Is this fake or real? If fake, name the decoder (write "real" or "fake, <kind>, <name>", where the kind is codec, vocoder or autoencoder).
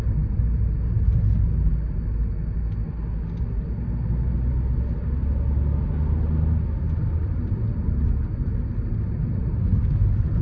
real